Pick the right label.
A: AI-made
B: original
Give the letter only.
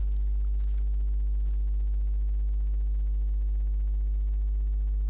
B